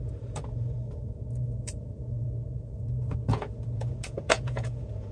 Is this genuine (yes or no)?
no